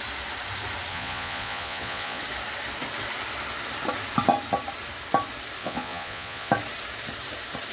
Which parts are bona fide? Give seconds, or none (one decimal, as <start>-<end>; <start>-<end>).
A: 0.0-0.9; 2.2-5.6; 6.5-7.7